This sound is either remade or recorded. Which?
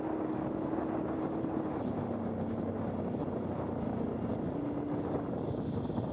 recorded